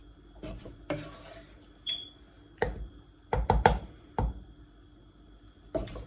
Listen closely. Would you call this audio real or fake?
real